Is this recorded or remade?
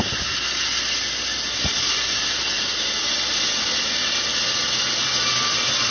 recorded